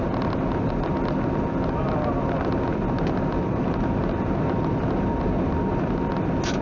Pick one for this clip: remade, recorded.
recorded